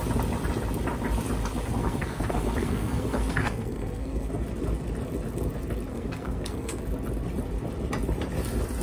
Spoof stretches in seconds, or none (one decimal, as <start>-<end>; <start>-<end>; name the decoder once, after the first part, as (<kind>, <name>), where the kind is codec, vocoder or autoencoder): 1.8-4.3 (codec, SNAC); 5.9-6.8